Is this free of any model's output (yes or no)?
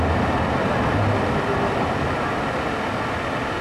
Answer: yes